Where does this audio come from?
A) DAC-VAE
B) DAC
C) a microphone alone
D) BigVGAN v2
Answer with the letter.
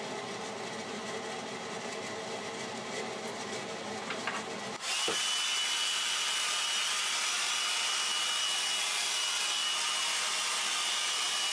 C